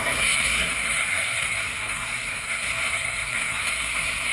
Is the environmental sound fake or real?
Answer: fake